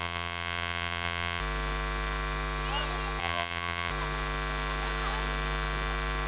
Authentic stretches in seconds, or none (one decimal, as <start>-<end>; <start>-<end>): 1.4-3.2; 3.9-6.3

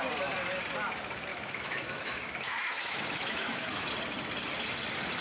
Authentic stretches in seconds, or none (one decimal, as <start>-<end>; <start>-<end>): 0.0-1.3; 3.9-5.2